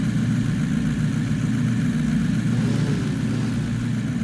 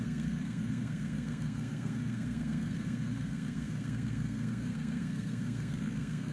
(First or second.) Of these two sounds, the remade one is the second